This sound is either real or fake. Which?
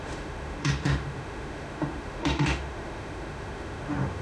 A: fake